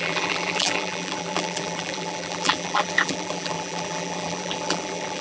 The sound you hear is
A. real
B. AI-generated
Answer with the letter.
B